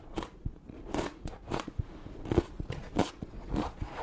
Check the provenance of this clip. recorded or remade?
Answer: remade